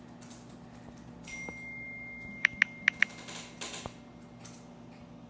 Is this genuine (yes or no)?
yes